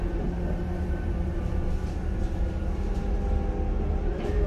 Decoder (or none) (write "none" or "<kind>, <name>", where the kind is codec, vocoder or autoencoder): none